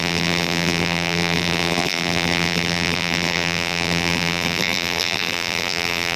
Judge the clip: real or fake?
fake